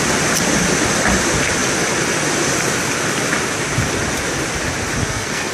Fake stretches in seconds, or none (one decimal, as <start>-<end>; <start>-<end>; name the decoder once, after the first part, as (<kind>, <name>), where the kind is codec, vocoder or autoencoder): 5.0-5.5 (codec, SNAC)